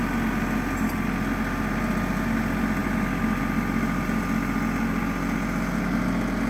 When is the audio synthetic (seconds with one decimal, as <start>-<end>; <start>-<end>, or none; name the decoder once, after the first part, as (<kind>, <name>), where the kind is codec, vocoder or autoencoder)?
2.8-3.4 (vocoder, BigVGAN v2)